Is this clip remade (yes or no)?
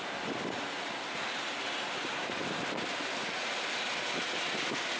no